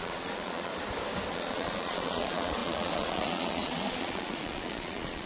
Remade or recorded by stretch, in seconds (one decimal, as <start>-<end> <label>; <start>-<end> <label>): 0.0-0.7 remade; 0.7-1.3 recorded; 1.3-5.3 remade